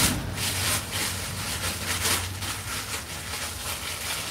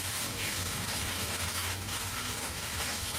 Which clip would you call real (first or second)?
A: first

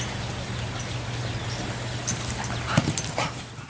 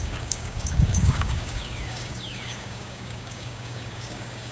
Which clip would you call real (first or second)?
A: first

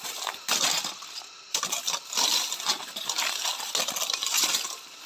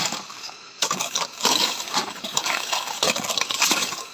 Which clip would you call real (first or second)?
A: first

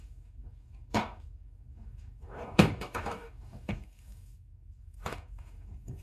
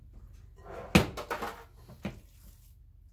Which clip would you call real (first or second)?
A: second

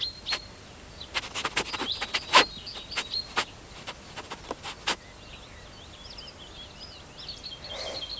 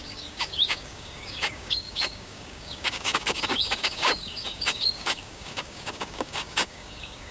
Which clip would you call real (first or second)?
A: first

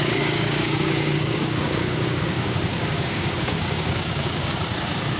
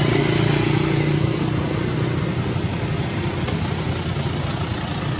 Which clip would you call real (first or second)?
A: second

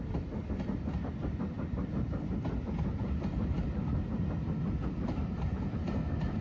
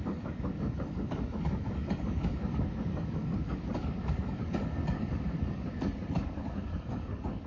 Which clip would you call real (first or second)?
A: first